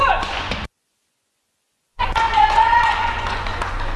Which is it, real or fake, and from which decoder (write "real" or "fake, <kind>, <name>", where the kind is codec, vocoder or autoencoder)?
fake, vocoder, Vocos